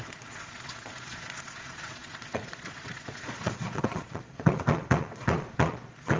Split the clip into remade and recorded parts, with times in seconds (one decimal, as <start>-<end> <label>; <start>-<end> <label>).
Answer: 0.0-6.2 remade